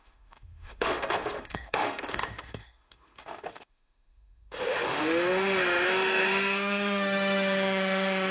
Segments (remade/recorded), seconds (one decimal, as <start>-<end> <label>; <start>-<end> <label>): 0.0-8.3 remade